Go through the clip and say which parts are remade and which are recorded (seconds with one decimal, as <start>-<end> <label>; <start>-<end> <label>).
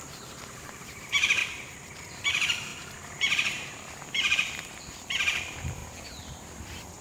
0.0-1.4 remade; 1.4-2.1 recorded; 2.1-5.8 remade; 5.8-6.4 recorded; 6.4-7.0 remade